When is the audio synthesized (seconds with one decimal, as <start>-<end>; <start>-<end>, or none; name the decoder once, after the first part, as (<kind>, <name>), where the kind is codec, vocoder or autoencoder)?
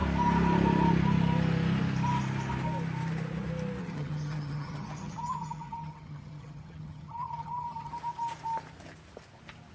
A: 3.8-7.9 (vocoder, HiFi-GAN)